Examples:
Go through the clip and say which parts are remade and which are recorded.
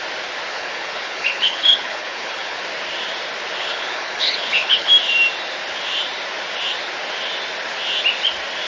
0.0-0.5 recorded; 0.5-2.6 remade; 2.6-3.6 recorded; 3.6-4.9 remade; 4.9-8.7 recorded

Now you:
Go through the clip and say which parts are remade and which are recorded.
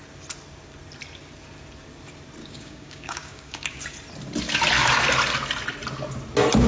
0.0-2.4 recorded; 2.4-3.8 remade; 3.8-6.7 recorded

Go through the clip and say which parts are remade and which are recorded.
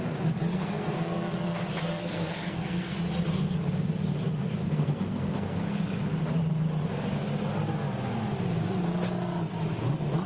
0.0-0.5 recorded; 0.5-1.0 remade; 1.0-2.0 recorded; 2.0-3.0 remade; 3.0-4.6 recorded; 4.6-5.8 remade; 5.8-10.3 recorded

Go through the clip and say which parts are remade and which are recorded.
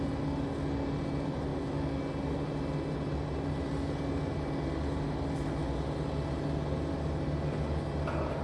0.0-8.4 recorded